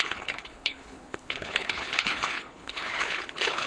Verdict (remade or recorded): remade